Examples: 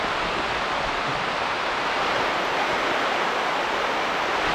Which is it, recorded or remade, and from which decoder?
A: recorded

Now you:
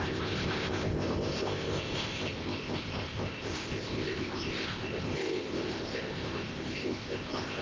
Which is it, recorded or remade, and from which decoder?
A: remade, codec, ZipCodec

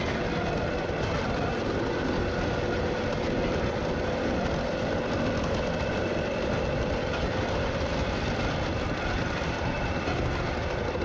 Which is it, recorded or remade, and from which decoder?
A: recorded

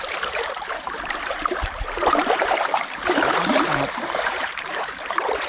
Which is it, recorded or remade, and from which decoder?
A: remade, vocoder, BigVGAN v2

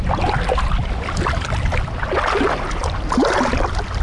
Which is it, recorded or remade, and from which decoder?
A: recorded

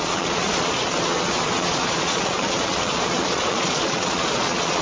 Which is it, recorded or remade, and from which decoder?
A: remade, vocoder, Vocos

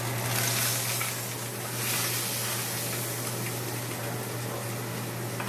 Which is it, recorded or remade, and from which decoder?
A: recorded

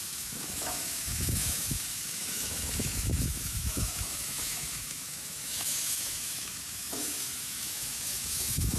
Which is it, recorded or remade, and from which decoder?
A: remade, autoencoder, DAC-VAE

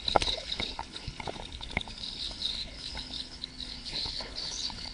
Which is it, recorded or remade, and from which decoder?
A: remade, codec, HILCodec